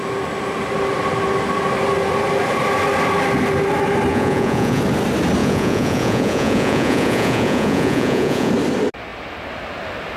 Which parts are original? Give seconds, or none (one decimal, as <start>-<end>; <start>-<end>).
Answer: 0.0-4.1; 4.8-5.4; 8.5-10.2